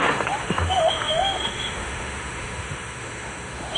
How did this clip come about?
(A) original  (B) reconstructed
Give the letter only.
B